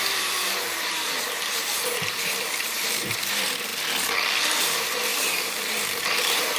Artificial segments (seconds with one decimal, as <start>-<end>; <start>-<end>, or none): 0.0-3.7; 4.6-6.6